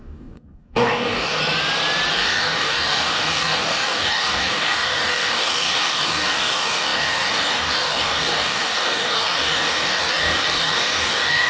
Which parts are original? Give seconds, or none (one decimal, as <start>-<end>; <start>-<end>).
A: 1.4-2.1